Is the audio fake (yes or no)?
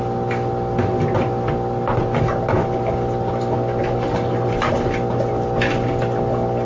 no